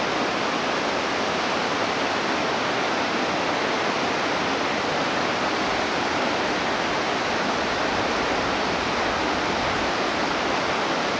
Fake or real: real